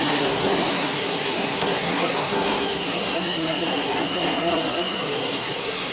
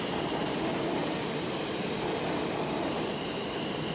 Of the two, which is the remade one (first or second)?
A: first